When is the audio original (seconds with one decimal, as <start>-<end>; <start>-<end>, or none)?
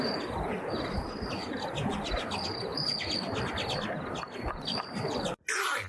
0.0-5.9